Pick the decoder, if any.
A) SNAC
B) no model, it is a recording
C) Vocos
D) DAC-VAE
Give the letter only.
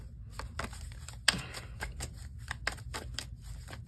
B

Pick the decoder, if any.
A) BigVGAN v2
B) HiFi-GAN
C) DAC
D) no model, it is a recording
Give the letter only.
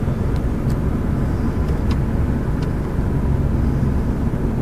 D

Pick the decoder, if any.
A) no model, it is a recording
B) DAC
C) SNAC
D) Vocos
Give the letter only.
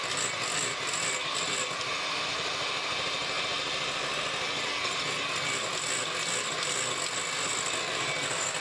A